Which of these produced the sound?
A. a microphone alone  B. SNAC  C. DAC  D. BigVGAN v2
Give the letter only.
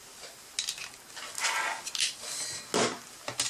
A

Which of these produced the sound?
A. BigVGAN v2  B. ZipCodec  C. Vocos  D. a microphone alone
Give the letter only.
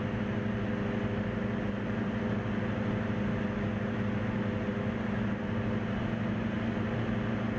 D